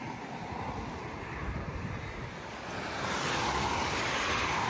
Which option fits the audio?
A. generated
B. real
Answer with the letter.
B